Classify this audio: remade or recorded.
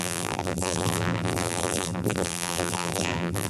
remade